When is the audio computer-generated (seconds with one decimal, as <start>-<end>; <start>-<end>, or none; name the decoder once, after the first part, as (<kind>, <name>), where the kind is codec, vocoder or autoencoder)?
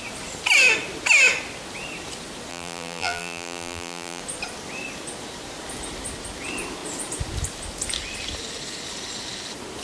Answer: 2.5-4.2 (vocoder, BigVGAN v2)